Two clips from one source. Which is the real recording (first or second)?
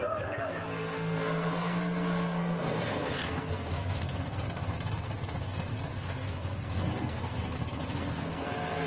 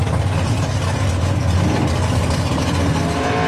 second